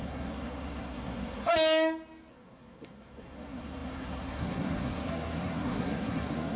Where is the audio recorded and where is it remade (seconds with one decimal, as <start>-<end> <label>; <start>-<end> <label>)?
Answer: 0.0-1.5 remade; 1.5-2.3 recorded; 2.3-6.6 remade